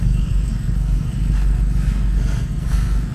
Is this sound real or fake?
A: fake